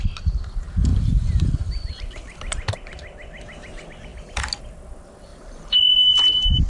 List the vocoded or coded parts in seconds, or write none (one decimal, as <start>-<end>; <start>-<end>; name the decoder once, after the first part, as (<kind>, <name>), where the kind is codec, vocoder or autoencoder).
5.3-5.8 (vocoder, BigVGAN v2)

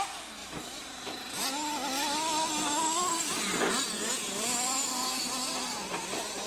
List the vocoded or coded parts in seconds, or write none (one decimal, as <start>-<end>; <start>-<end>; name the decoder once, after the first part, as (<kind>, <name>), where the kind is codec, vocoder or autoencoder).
0.4-1.5 (vocoder, BigVGAN v2)

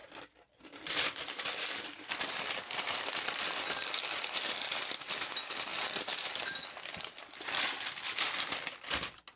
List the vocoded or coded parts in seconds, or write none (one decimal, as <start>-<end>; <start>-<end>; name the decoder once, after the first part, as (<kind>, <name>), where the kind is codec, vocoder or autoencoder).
5.7-6.8 (vocoder, BigVGAN v2)

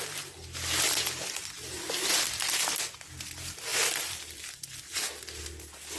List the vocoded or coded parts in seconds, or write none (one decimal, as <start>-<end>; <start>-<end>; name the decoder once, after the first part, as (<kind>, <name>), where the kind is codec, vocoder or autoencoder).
3.7-5.4 (vocoder, BigVGAN v2)

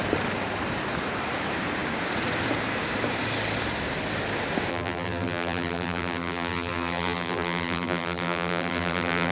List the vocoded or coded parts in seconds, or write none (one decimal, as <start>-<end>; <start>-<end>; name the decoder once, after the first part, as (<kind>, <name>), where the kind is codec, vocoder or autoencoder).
4.7-9.3 (vocoder, BigVGAN v2)

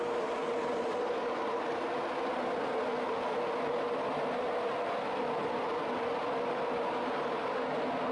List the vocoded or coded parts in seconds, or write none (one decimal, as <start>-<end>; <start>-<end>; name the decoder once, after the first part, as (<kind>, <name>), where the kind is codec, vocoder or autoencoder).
0.4-1.8 (vocoder, BigVGAN v2)

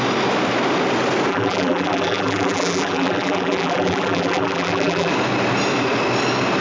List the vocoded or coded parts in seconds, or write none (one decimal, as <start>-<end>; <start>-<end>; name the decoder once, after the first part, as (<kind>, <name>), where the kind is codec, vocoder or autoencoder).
1.3-5.1 (vocoder, BigVGAN v2)